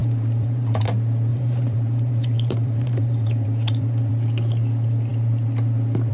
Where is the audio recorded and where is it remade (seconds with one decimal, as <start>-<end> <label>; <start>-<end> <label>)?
0.0-0.9 remade; 0.9-1.3 recorded; 1.3-4.1 remade; 4.1-6.1 recorded